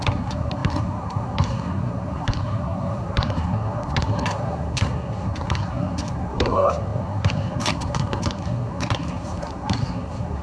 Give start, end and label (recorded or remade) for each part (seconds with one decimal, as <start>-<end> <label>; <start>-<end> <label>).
0.0-10.4 remade